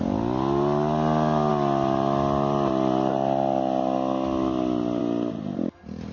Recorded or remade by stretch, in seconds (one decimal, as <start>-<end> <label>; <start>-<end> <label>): 0.0-6.1 recorded